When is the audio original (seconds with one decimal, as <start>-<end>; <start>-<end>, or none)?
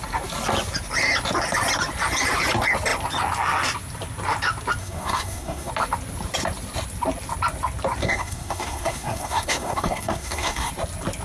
0.0-4.8; 5.7-8.0; 10.7-11.2